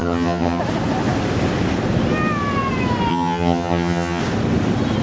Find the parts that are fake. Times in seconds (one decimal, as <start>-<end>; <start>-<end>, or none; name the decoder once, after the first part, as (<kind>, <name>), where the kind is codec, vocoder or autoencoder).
0.0-0.6 (vocoder, HiFi-GAN); 3.1-4.2